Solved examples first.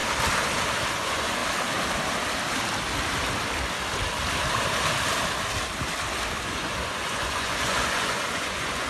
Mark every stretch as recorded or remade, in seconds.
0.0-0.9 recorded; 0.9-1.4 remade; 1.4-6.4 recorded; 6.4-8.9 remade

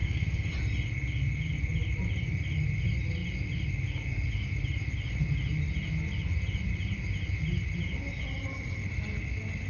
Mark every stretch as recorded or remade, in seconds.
0.0-0.5 remade; 0.5-9.7 recorded